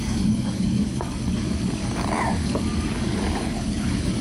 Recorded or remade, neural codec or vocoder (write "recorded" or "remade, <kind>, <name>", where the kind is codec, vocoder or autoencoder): remade, codec, DAC